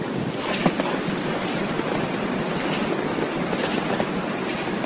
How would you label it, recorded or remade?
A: recorded